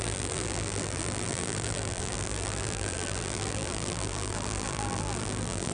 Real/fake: fake